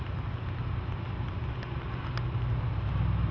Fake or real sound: real